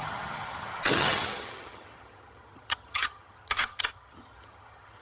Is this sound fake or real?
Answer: fake